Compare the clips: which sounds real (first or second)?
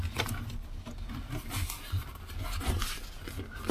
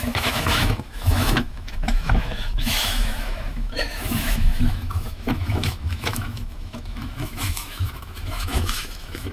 first